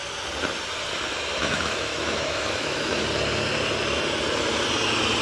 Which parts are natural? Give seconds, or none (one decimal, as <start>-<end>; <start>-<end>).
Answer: 0.0-1.4; 3.0-5.2